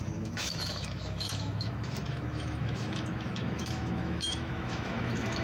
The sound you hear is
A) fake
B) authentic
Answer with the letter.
A